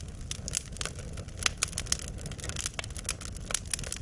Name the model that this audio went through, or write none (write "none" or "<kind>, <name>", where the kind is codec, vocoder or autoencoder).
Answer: none